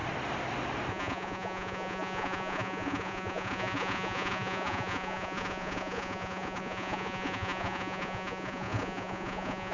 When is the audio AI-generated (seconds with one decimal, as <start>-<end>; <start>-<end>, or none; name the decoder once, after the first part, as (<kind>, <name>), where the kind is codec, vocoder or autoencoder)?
0.9-9.7 (vocoder, Vocos)